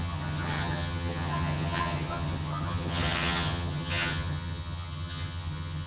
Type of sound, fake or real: fake